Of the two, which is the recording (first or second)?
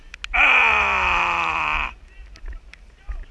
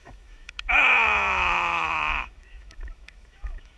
first